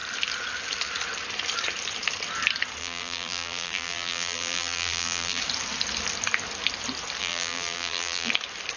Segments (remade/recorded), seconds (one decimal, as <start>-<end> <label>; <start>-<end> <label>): 0.0-2.8 recorded; 2.8-5.4 remade; 5.4-7.2 recorded; 7.2-8.3 remade; 8.3-8.8 recorded